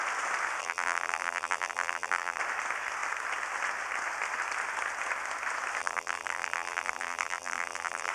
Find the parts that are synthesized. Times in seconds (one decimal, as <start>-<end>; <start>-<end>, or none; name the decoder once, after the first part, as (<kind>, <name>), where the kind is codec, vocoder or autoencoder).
0.6-2.4 (vocoder, BigVGAN v2); 5.8-8.1